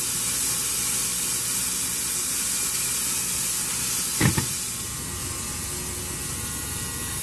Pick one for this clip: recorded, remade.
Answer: recorded